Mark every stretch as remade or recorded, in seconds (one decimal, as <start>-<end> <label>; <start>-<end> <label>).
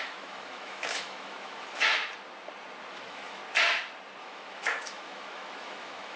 0.0-2.0 remade; 2.0-2.9 recorded; 2.9-3.4 remade; 3.4-4.2 recorded; 4.2-6.2 remade